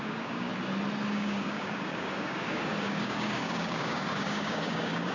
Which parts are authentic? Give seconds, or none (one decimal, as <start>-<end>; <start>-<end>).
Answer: 0.5-1.1